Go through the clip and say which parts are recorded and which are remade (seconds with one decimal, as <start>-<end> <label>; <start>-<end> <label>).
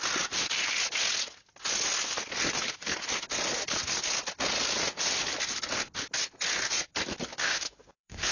0.0-7.4 recorded; 7.4-8.3 remade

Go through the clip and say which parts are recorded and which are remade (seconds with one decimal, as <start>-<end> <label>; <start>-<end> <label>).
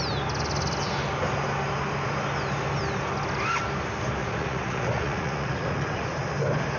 0.0-4.2 recorded; 4.2-6.3 remade; 6.3-6.8 recorded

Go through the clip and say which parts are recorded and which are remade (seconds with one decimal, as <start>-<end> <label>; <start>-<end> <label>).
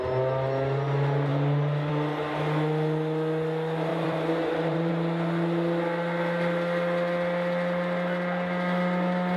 0.0-3.9 recorded; 3.9-4.9 remade; 4.9-9.4 recorded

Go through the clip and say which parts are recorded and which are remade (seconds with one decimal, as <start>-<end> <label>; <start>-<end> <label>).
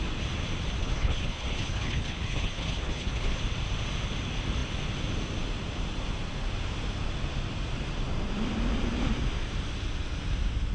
0.0-0.8 recorded; 0.8-3.4 remade; 3.4-10.7 recorded